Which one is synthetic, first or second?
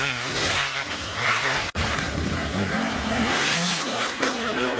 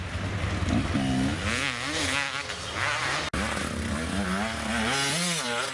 first